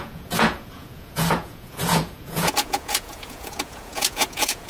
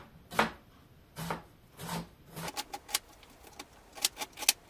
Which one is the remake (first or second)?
first